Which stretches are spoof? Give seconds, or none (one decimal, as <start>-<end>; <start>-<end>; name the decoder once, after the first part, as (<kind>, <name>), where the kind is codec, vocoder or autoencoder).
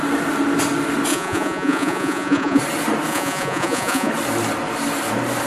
1.1-2.6 (vocoder, Vocos); 3.1-4.1